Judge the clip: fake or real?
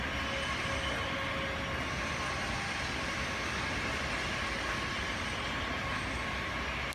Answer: real